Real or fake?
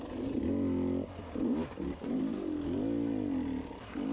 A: real